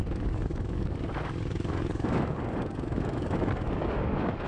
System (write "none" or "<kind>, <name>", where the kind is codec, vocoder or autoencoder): codec, DAC